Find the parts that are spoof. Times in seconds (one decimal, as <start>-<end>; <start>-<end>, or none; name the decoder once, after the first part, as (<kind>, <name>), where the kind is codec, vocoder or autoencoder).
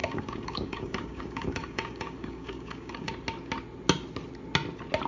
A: 0.0-3.1 (codec, DAC)